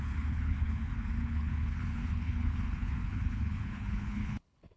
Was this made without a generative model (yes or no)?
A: no